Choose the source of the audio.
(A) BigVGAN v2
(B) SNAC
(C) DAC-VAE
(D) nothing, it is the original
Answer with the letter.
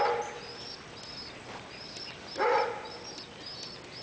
D